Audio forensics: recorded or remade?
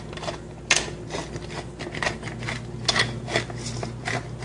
recorded